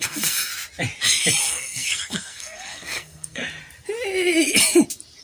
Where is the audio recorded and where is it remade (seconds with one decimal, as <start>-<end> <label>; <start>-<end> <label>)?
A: 0.0-0.5 remade; 0.5-1.4 recorded; 1.4-3.4 remade; 3.4-5.2 recorded